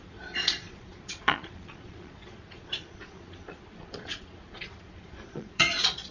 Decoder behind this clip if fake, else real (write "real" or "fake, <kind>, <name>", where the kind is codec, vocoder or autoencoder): fake, vocoder, Vocos